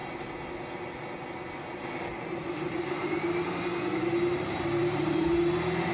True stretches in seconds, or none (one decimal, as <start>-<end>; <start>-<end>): 0.0-4.8; 5.5-5.9

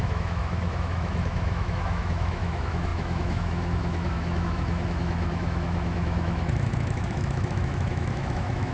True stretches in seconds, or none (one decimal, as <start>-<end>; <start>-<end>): none

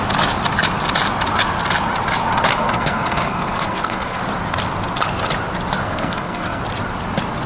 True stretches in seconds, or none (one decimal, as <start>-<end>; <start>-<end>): 0.0-2.6; 4.2-5.8; 6.6-7.5